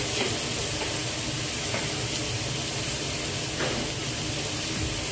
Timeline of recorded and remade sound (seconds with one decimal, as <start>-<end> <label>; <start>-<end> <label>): 0.0-5.1 recorded